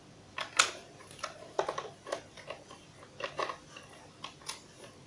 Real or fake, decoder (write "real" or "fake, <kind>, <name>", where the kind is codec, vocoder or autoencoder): real